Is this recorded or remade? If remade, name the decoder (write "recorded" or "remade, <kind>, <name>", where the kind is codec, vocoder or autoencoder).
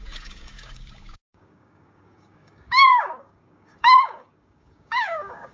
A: remade, codec, DAC